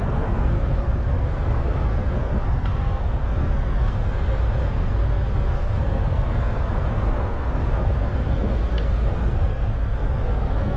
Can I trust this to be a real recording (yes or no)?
no